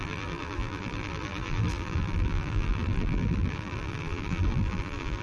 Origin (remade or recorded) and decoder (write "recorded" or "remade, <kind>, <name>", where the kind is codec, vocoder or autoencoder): remade, vocoder, BigVGAN v2